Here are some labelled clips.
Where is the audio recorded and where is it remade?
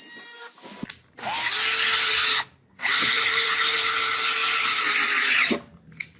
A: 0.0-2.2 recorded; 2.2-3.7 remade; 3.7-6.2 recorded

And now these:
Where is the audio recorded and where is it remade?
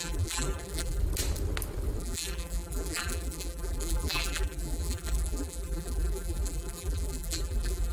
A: 0.0-1.0 remade; 1.0-2.0 recorded; 2.0-7.9 remade